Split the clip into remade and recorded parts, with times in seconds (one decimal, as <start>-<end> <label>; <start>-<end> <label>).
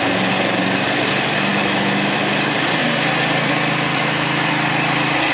0.0-1.5 recorded; 1.5-2.2 remade; 2.2-3.9 recorded; 3.9-4.7 remade; 4.7-5.3 recorded